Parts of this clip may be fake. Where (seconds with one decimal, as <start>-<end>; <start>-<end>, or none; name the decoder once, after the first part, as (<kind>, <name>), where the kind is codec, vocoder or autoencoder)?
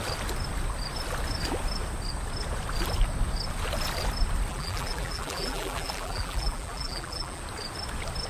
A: 4.5-7.4 (vocoder, BigVGAN v2)